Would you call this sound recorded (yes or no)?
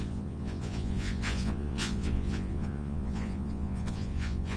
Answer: no